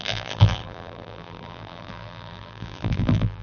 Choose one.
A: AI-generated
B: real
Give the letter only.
A